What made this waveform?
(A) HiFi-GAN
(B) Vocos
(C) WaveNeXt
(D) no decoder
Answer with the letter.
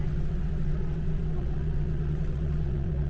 C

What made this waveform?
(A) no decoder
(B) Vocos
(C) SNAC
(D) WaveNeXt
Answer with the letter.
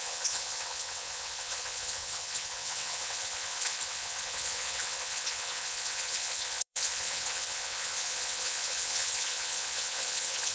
D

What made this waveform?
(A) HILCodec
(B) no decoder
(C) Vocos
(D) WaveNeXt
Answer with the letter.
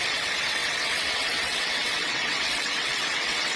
D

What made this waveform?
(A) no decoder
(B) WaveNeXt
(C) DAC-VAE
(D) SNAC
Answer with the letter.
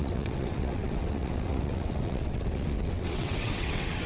B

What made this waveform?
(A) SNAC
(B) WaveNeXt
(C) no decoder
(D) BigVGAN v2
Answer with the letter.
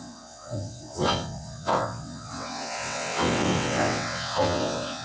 B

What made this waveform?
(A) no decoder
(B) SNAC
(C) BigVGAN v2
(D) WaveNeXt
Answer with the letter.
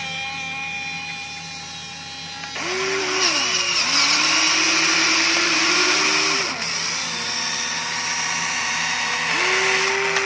A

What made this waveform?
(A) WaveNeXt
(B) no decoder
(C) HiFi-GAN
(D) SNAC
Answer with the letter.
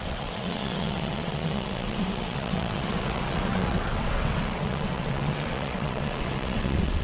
A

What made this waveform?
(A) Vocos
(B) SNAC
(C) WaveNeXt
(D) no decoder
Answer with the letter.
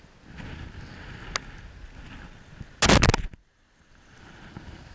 D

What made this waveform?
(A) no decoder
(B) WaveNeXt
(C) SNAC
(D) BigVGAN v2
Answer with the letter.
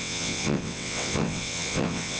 B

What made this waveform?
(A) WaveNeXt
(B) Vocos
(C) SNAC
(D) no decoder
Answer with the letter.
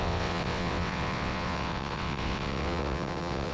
A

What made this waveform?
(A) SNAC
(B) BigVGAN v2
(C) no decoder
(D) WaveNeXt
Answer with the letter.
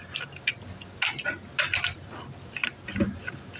C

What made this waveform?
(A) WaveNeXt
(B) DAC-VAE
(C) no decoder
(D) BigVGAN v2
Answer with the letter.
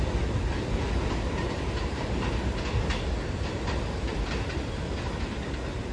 C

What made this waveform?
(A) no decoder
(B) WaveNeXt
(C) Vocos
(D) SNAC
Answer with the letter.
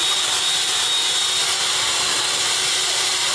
A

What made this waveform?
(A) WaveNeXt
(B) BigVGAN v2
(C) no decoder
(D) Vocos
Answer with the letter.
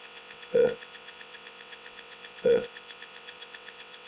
A